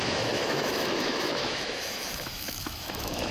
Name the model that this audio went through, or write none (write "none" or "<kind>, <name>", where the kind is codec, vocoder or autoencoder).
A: autoencoder, DAC-VAE